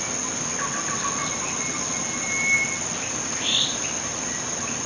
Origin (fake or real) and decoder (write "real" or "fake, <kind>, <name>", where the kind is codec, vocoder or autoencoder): real